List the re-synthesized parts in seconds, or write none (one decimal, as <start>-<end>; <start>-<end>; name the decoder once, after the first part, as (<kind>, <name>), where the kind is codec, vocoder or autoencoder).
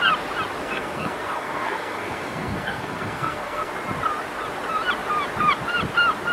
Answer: 0.6-3.7 (codec, SNAC)